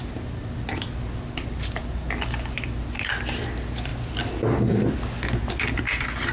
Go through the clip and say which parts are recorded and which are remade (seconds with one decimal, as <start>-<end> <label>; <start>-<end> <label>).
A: 0.0-6.3 recorded